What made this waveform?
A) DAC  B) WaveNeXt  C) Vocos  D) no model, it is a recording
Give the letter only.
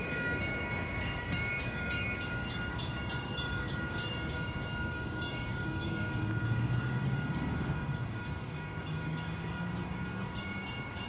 A